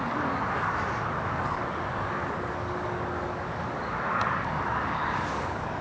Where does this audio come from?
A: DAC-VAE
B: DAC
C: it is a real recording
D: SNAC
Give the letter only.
B